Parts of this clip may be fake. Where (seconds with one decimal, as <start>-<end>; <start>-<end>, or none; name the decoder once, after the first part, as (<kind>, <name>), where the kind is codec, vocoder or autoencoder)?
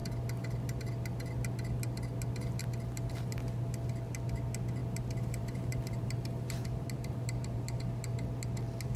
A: 4.8-7.8 (vocoder, BigVGAN v2)